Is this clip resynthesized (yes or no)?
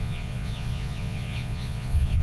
yes